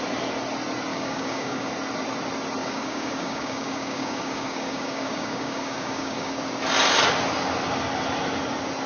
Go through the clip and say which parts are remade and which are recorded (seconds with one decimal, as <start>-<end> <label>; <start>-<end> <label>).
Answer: 0.0-0.9 recorded; 0.9-1.7 remade; 1.7-2.6 recorded; 2.6-6.4 remade; 6.4-8.9 recorded

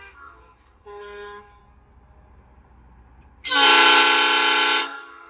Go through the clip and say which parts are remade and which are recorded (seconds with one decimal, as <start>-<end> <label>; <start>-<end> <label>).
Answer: 0.0-1.6 remade; 1.6-4.8 recorded; 4.8-5.3 remade

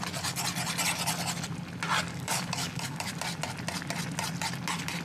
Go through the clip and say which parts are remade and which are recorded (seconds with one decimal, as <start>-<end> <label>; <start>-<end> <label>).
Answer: 0.0-2.1 recorded; 2.1-3.1 remade; 3.1-5.0 recorded